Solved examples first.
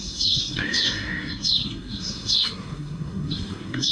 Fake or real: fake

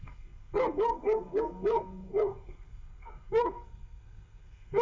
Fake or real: fake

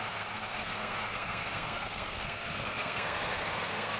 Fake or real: fake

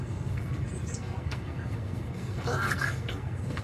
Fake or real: fake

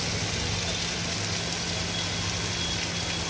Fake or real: real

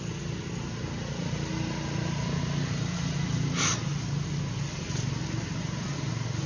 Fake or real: real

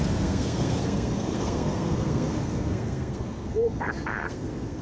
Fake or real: fake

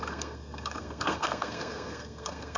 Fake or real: fake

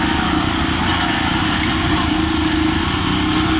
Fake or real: real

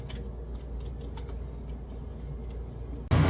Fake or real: real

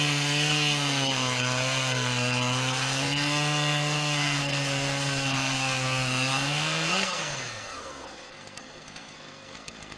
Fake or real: fake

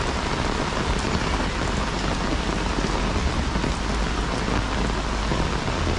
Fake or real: real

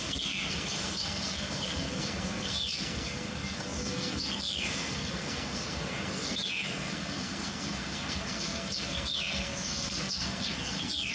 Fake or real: fake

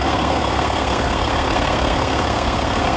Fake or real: fake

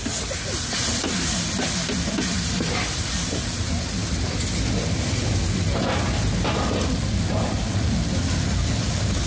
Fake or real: real